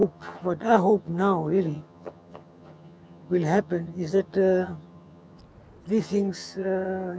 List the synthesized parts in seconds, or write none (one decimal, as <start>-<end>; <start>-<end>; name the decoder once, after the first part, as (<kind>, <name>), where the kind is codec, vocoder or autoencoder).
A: 0.0-5.4 (vocoder, HiFi-GAN); 6.0-7.2